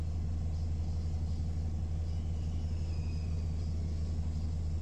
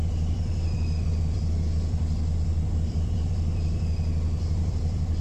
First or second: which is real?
first